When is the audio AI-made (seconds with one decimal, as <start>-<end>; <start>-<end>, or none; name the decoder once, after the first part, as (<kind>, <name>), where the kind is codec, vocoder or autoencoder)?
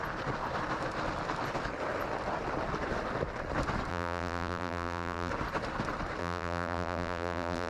3.9-5.3 (vocoder, BigVGAN v2); 6.2-7.7